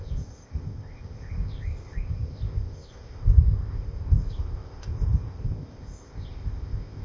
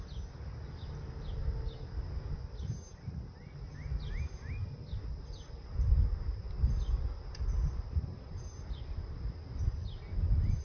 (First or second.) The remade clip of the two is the first